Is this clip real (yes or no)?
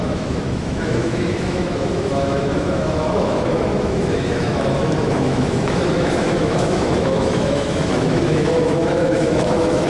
no